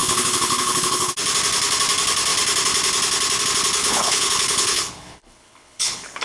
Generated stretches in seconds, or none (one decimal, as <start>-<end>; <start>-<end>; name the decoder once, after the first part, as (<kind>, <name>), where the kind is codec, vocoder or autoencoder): 0.0-1.1 (codec, HILCodec); 3.8-6.2